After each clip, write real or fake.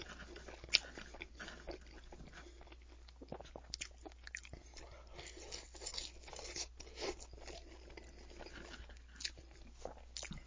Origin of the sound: real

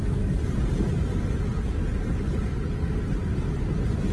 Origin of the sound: real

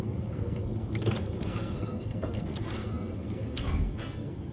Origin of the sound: fake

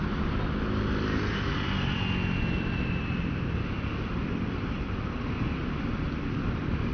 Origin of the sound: real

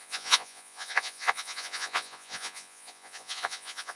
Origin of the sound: fake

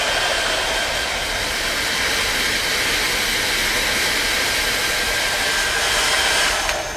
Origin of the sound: real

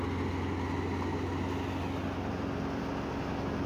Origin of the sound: real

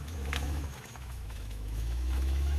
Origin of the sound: fake